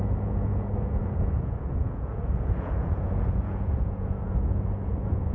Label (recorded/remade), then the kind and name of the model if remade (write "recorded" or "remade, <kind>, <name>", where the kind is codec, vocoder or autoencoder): remade, vocoder, Vocos